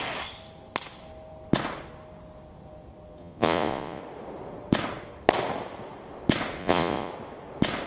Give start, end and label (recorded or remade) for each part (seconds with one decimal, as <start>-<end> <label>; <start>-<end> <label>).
0.0-3.2 recorded; 3.2-4.0 remade; 4.0-6.6 recorded; 6.6-7.1 remade; 7.1-7.9 recorded